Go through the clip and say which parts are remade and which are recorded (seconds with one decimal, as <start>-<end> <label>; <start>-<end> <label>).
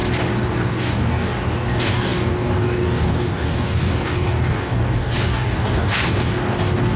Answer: 0.0-0.5 recorded; 0.5-7.0 remade